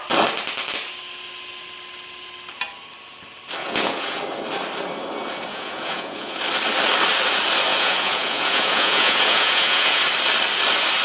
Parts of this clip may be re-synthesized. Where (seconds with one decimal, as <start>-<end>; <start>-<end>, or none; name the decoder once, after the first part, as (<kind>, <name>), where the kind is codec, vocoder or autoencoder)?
3.6-4.2 (vocoder, Vocos); 5.5-6.4; 7.7-10.0